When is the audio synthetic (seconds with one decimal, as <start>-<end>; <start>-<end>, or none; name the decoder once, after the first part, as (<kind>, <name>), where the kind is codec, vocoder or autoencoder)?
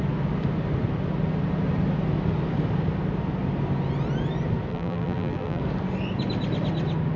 4.7-5.6 (vocoder, BigVGAN v2)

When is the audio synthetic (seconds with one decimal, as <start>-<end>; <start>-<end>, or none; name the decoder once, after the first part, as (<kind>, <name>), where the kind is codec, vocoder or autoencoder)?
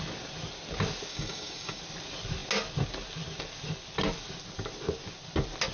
1.1-1.8 (codec, DAC)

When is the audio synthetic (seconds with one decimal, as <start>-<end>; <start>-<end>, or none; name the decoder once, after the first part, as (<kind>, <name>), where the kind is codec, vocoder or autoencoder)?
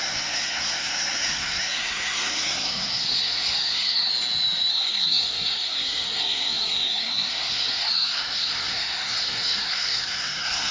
0.0-4.1 (codec, SNAC); 4.7-10.7